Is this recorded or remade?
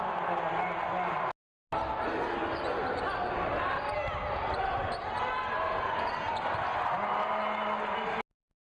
recorded